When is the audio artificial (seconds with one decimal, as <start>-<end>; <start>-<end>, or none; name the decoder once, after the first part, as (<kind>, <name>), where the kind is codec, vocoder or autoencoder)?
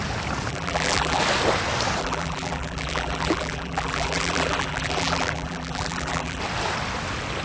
0.5-1.2 (vocoder, BigVGAN v2); 2.0-6.4